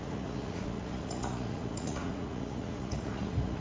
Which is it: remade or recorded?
remade